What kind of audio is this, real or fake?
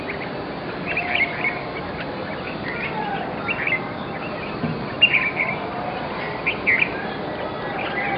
real